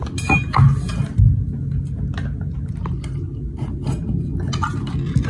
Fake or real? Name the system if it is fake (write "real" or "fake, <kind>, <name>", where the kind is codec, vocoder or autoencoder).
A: real